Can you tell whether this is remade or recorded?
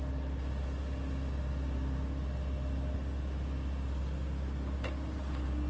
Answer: recorded